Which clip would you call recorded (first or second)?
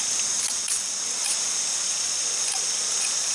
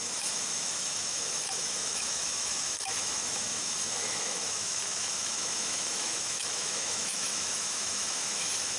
first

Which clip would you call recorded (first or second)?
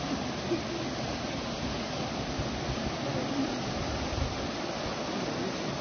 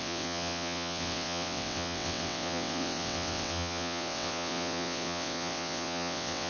first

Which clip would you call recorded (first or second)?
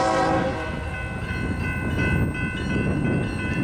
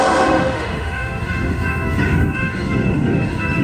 first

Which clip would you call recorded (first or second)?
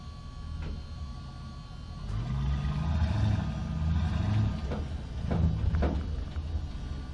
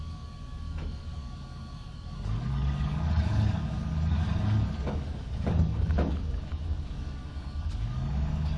first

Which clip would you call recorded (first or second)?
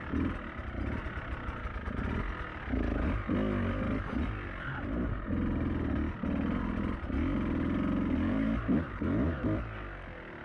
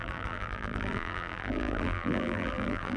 first